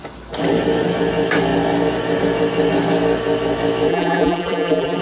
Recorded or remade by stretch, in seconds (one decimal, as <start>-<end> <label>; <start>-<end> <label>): 0.0-3.9 recorded; 3.9-5.0 remade